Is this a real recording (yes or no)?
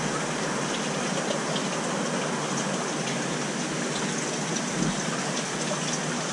yes